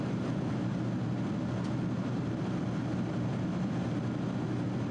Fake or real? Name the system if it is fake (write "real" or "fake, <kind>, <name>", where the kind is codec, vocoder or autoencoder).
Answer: real